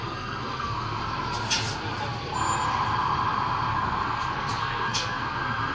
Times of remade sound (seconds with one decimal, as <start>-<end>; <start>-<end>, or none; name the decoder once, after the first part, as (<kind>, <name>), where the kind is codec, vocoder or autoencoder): 0.0-1.0 (codec, SNAC); 3.7-5.7